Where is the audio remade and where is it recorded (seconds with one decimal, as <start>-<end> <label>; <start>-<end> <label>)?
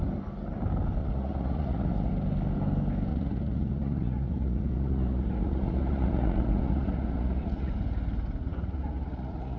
0.0-1.0 recorded; 1.0-2.1 remade; 2.1-3.1 recorded; 3.1-7.7 remade; 7.7-8.4 recorded; 8.4-9.6 remade